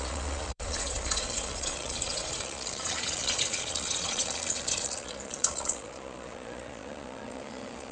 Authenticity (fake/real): fake